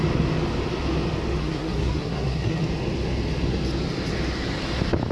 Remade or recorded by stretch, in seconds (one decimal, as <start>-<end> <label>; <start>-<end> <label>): 0.0-1.4 recorded; 1.4-2.6 remade; 2.6-5.1 recorded